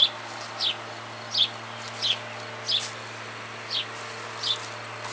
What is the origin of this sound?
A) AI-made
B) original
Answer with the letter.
B